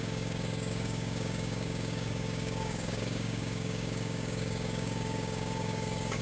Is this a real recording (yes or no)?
no